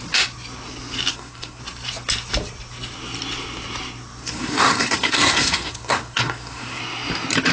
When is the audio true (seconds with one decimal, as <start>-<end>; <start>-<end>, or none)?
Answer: 0.0-1.1; 1.6-4.2; 6.8-7.5